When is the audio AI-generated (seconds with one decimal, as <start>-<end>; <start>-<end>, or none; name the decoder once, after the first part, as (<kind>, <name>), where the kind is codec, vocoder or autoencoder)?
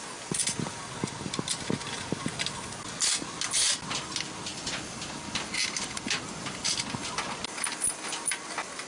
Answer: none